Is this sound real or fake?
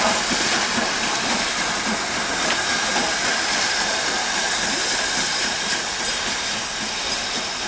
real